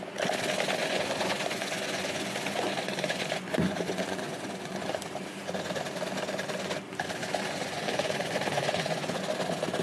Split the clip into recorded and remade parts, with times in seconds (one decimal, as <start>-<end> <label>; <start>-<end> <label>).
0.0-0.8 recorded; 0.8-5.0 remade; 5.0-7.2 recorded; 7.2-9.2 remade; 9.2-9.8 recorded

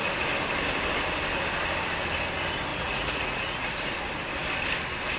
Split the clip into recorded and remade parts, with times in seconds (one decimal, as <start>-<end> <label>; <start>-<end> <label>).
0.0-2.7 recorded; 2.7-3.9 remade; 3.9-5.2 recorded

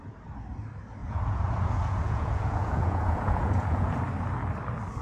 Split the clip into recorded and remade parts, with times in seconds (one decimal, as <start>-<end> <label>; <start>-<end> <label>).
0.0-1.0 recorded; 1.0-4.0 remade; 4.0-5.0 recorded

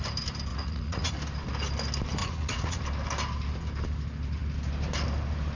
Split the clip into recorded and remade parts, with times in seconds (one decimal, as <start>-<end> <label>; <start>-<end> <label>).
0.0-0.5 recorded; 0.5-1.1 remade; 1.1-2.2 recorded; 2.2-2.8 remade; 2.8-5.6 recorded

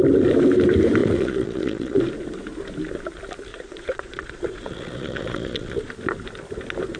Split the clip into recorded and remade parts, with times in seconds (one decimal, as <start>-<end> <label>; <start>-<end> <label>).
0.0-1.0 recorded; 1.0-2.0 remade; 2.0-3.5 recorded; 3.5-5.9 remade; 5.9-7.0 recorded

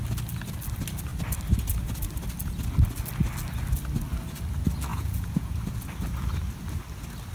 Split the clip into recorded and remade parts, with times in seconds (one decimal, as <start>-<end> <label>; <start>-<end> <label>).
0.0-4.9 recorded; 4.9-5.6 remade; 5.6-7.3 recorded

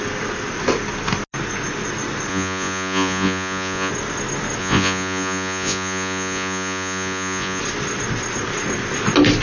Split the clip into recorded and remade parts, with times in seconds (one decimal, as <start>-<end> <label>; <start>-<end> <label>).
0.0-2.3 recorded; 2.3-3.9 remade; 3.9-4.6 recorded; 4.6-7.6 remade; 7.6-9.4 recorded